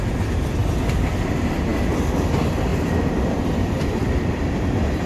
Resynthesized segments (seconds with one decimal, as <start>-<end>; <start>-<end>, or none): 2.7-5.1